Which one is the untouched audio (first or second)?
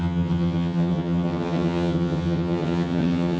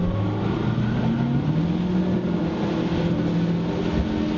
second